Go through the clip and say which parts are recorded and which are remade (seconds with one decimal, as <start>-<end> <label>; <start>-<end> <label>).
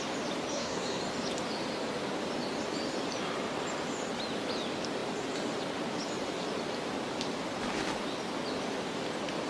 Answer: 0.0-0.5 recorded; 0.5-1.0 remade; 1.0-9.5 recorded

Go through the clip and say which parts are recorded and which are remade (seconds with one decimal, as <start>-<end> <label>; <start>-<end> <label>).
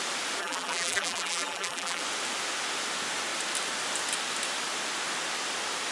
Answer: 0.0-0.4 recorded; 0.4-2.0 remade; 2.0-5.9 recorded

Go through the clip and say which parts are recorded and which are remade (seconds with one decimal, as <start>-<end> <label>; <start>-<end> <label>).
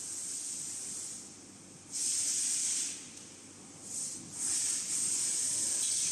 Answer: 0.0-6.1 recorded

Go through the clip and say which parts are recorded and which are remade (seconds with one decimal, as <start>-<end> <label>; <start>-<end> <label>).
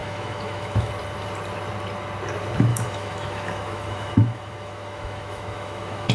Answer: 0.0-0.9 remade; 0.9-2.7 recorded; 2.7-6.1 remade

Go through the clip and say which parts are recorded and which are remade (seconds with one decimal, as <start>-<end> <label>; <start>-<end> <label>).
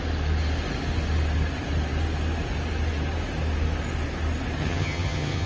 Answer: 0.0-4.6 recorded; 4.6-5.5 remade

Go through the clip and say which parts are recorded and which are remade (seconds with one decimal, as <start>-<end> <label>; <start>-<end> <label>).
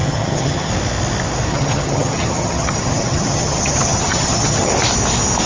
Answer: 0.0-0.7 remade; 0.7-1.5 recorded; 1.5-4.7 remade; 4.7-5.5 recorded